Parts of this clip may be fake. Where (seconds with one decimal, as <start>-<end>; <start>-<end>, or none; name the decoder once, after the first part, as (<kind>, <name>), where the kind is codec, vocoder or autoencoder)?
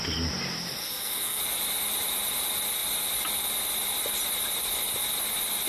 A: 0.8-1.4 (codec, SNAC)